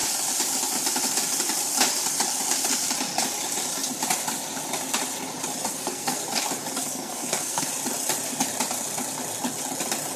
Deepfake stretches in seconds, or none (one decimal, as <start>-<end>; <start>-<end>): 5.7-6.2; 6.8-7.7